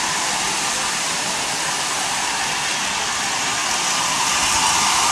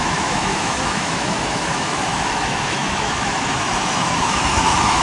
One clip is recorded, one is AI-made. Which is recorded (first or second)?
first